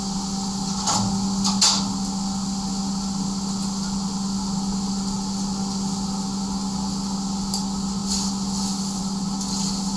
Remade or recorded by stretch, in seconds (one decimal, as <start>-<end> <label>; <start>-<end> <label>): 0.0-10.0 recorded